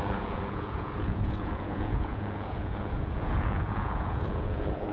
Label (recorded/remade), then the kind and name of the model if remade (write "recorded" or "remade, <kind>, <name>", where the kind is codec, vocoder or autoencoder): remade, vocoder, Vocos